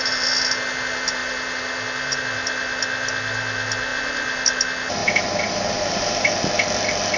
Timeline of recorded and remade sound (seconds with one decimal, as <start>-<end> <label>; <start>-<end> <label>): 0.0-5.0 recorded; 5.0-6.4 remade; 6.4-7.2 recorded